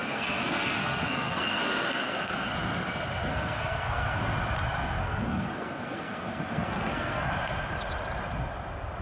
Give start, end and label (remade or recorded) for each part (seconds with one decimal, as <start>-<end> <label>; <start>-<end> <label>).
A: 0.0-2.5 remade; 2.5-3.3 recorded; 3.3-4.2 remade; 4.2-5.0 recorded; 5.0-7.3 remade; 7.3-9.0 recorded